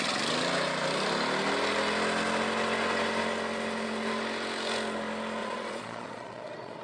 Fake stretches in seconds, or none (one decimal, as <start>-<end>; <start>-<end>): 5.4-6.8